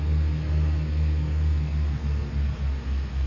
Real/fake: fake